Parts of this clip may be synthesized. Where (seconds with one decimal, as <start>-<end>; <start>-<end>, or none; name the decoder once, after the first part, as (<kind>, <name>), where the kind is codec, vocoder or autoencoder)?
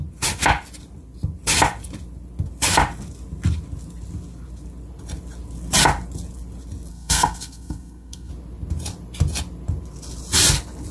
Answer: 6.9-8.3 (codec, SNAC)